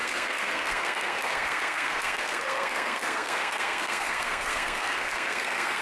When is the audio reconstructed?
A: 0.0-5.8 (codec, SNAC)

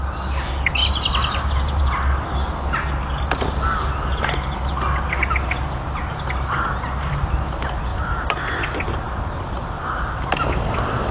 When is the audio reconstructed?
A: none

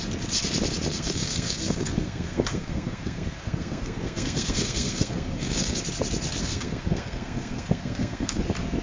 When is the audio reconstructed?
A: 0.9-5.8 (codec, SNAC); 6.4-8.4

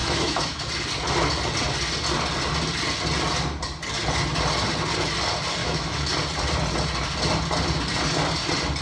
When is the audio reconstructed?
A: 0.0-0.6 (autoencoder, DAC-VAE); 5.6-6.1

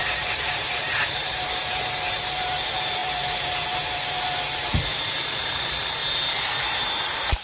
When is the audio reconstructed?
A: 0.0-6.0 (vocoder, BigVGAN v2); 6.6-7.4

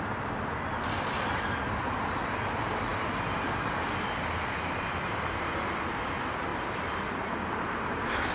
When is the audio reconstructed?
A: 2.9-4.5 (vocoder, BigVGAN v2); 6.5-7.1

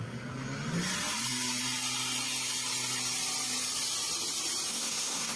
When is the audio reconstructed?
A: 4.7-5.4 (codec, SNAC)